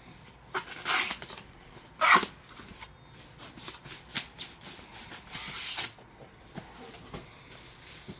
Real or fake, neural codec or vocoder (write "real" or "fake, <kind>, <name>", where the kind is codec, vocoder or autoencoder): real